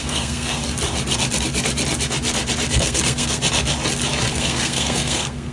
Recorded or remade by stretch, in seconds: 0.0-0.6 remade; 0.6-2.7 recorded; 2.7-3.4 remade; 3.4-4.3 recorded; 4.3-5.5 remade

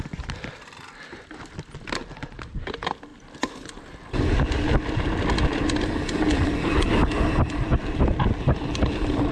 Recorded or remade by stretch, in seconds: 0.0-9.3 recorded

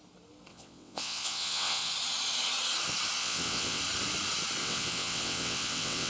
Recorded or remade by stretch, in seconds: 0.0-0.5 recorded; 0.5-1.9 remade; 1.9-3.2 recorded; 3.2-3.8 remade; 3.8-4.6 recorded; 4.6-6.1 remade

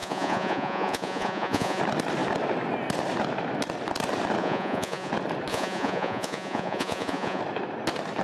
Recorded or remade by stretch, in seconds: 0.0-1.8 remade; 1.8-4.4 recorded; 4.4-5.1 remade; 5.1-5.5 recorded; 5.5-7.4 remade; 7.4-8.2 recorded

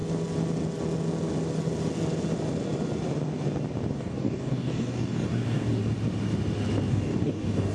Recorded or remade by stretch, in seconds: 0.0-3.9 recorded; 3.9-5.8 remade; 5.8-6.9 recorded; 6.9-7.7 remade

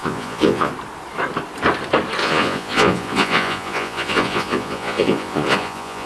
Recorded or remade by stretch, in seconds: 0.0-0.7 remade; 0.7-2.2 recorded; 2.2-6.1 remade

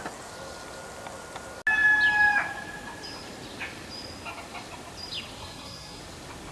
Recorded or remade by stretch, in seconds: 0.0-5.4 recorded; 5.4-6.0 remade; 6.0-6.5 recorded

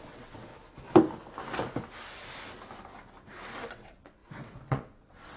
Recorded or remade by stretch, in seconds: 0.0-0.5 remade; 0.5-3.7 recorded; 3.7-5.4 remade